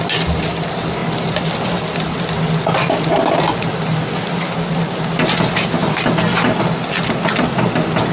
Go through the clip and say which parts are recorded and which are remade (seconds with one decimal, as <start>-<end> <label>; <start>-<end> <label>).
0.0-8.1 recorded